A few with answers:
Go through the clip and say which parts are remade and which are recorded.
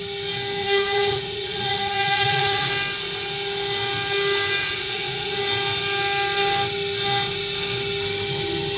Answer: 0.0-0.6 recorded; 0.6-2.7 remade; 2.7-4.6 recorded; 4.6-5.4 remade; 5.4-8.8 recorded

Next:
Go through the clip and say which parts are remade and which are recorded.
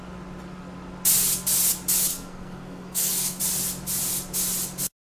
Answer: 0.0-2.1 recorded; 2.1-3.4 remade; 3.4-5.0 recorded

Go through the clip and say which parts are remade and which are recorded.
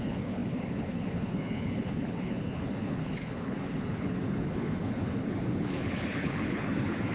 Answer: 0.0-7.1 remade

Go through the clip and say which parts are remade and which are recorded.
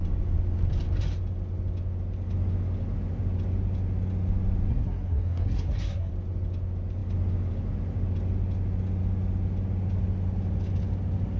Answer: 0.0-4.7 recorded; 4.7-6.1 remade; 6.1-11.4 recorded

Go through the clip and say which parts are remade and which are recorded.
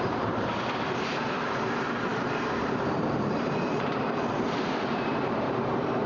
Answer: 0.0-6.1 remade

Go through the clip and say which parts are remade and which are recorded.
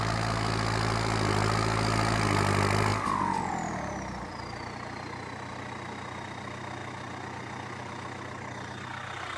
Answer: 0.0-9.4 recorded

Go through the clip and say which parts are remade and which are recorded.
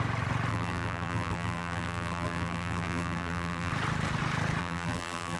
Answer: 0.0-0.5 recorded; 0.5-3.7 remade; 3.7-4.6 recorded; 4.6-5.4 remade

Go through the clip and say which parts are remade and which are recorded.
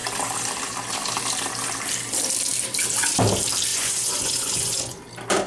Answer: 0.0-3.7 recorded; 3.7-5.0 remade; 5.0-5.5 recorded